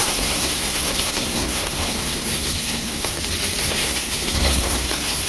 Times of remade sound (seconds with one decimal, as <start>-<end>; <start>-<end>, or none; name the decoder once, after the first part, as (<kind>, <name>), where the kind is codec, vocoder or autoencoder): 0.0-3.2 (codec, SNAC); 3.6-5.3